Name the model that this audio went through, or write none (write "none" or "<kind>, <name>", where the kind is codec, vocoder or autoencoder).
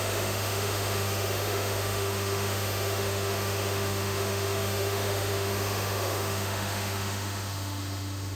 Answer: autoencoder, DAC-VAE